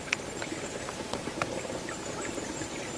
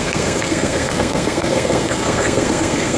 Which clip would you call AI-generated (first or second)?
second